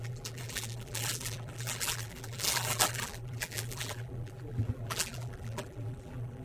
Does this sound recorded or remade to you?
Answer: remade